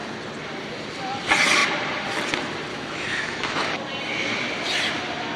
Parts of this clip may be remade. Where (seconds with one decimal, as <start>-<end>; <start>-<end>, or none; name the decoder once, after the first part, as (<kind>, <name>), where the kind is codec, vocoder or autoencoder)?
2.7-3.7 (autoencoder, DAC-VAE)